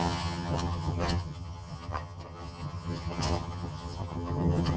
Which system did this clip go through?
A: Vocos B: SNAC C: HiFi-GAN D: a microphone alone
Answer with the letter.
C